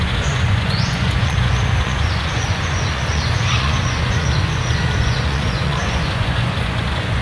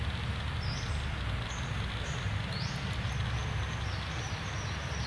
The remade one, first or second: first